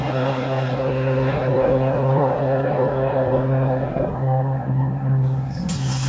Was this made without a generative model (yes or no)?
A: no